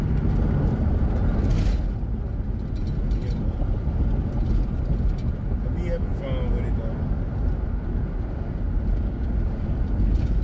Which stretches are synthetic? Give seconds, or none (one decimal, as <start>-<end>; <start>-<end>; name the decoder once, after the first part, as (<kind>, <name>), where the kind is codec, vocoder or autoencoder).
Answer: none